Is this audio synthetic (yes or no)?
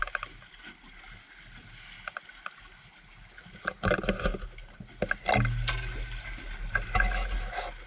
no